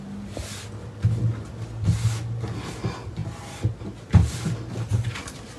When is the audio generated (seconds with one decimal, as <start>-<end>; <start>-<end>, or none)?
none